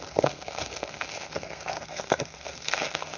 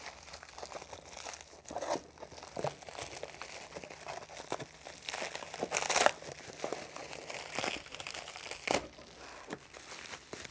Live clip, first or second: second